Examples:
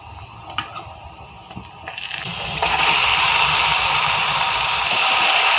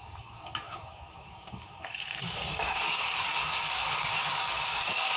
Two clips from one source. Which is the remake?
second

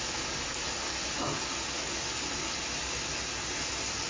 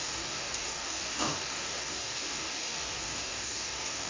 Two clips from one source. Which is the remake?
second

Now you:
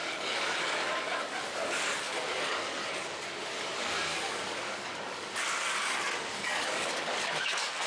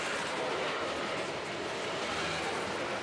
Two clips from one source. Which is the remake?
first